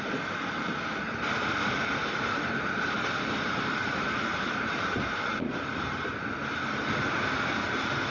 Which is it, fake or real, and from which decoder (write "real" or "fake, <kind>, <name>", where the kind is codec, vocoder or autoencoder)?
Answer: fake, vocoder, BigVGAN v2